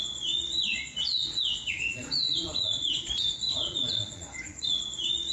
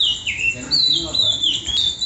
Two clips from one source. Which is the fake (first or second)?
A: first